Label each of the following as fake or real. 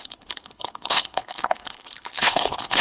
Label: fake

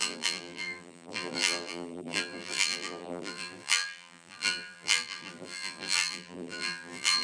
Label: fake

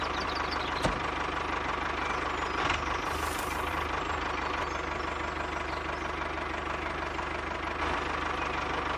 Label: real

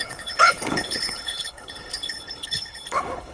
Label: fake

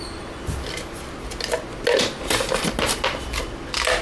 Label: real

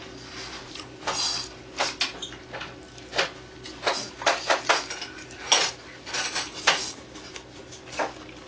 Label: real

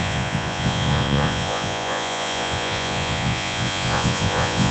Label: fake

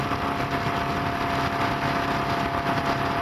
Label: real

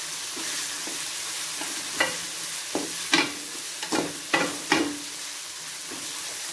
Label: real